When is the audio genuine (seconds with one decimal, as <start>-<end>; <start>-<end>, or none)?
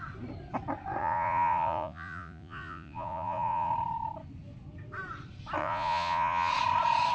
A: 0.0-1.0; 3.7-5.6; 6.5-7.1